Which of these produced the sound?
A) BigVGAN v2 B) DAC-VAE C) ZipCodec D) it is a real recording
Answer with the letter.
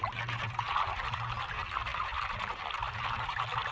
D